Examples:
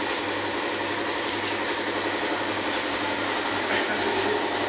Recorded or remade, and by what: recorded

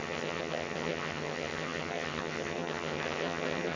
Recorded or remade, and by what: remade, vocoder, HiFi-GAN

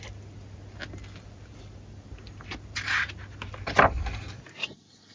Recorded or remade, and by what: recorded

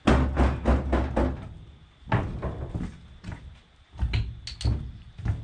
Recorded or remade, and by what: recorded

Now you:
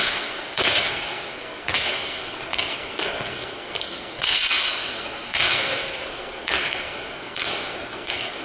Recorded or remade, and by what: remade, codec, SNAC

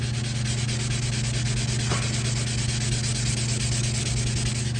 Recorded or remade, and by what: recorded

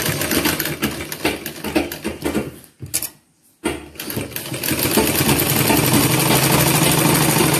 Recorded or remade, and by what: recorded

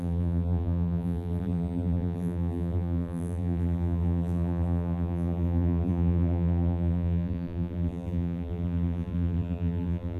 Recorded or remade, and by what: remade, vocoder, BigVGAN v2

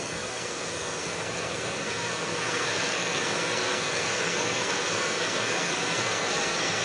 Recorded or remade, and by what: remade, codec, SNAC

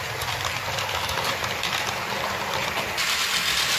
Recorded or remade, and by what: recorded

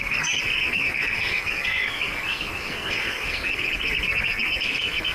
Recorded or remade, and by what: remade, codec, SNAC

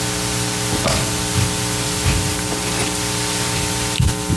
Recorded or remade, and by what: recorded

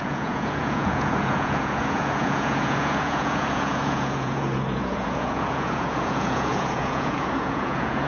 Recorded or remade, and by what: remade, vocoder, Vocos